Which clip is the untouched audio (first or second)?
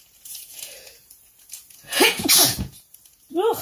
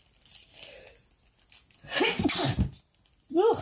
second